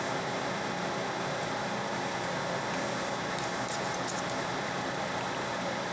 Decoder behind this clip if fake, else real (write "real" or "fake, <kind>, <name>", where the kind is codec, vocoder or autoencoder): real